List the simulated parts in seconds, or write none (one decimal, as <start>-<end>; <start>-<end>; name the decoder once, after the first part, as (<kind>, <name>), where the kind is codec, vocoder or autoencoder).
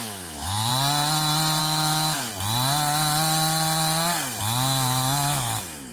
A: 0.0-0.7 (autoencoder, DAC-VAE); 1.6-2.3; 4.4-5.9